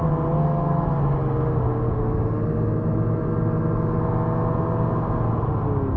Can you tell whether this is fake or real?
real